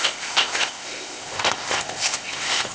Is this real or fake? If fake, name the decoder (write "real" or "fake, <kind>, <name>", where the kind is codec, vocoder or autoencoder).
fake, codec, ZipCodec